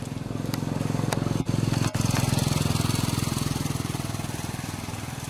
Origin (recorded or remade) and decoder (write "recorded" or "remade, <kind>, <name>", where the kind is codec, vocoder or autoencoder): recorded